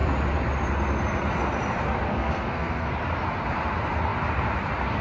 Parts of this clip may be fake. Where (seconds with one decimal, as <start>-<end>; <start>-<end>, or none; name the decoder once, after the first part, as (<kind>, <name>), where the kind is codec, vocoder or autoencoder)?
2.1-2.9 (codec, SNAC)